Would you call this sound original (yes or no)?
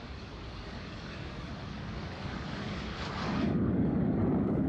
no